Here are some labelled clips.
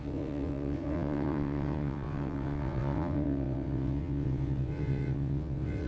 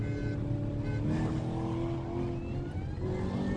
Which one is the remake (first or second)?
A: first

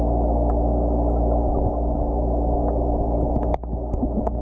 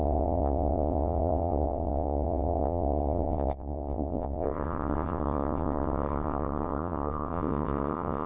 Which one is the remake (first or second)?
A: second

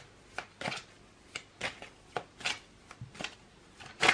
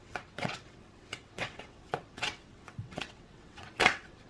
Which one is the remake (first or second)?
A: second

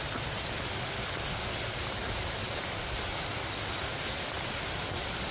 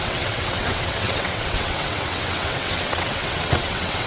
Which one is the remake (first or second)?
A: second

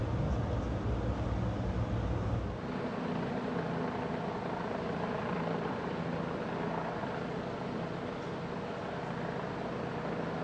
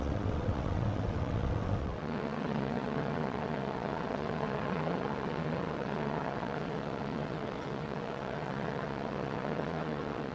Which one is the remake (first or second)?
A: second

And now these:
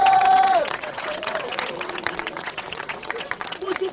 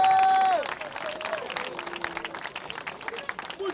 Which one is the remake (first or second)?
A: first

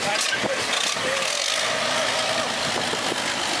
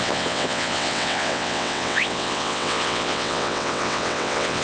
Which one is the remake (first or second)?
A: second